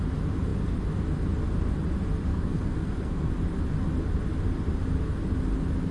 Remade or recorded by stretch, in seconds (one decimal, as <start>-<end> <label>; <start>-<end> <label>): 0.0-2.3 recorded; 2.3-3.3 remade; 3.3-5.9 recorded